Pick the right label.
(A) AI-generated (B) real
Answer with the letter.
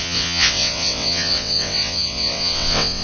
A